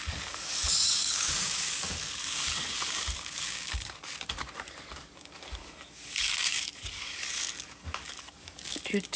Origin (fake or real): fake